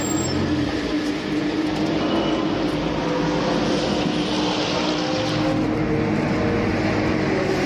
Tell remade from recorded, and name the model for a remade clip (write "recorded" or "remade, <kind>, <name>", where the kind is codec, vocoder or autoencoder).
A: recorded